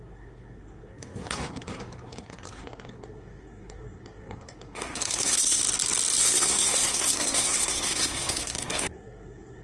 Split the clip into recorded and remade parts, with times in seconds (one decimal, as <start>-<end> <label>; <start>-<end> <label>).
0.0-5.6 remade; 5.6-6.2 recorded; 6.2-9.6 remade